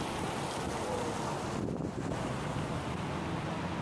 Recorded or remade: recorded